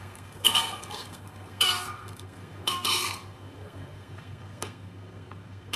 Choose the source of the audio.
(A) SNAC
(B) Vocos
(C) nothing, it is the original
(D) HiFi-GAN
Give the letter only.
A